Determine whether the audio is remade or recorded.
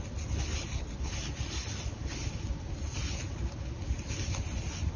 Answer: recorded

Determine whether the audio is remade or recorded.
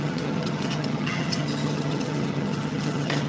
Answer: remade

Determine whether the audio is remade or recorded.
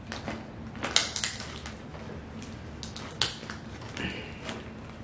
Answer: recorded